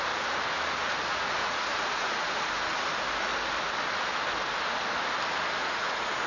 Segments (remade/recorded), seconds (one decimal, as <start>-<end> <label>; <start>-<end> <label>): 0.0-1.1 recorded; 1.1-2.4 remade; 2.4-5.6 recorded; 5.6-6.3 remade